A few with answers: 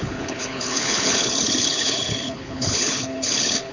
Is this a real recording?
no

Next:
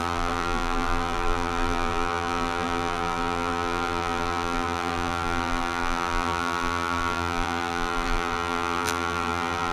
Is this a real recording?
no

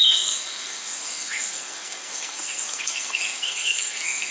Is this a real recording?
no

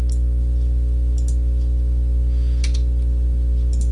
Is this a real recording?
yes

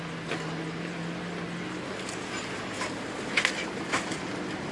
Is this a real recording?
yes